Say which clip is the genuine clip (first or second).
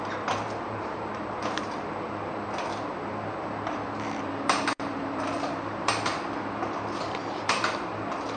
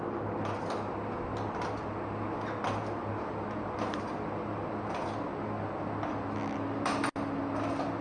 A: second